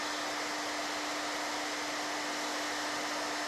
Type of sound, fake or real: real